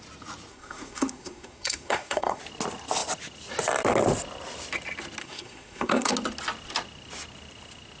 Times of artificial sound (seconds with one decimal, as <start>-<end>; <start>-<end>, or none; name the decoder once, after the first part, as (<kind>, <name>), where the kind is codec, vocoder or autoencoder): 0.5-2.4 (codec, SNAC); 5.2-6.1